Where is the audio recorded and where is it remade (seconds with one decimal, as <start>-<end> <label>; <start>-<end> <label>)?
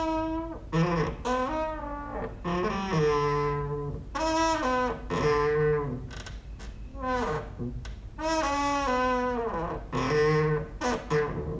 0.0-6.9 recorded; 6.9-7.6 remade; 7.6-11.6 recorded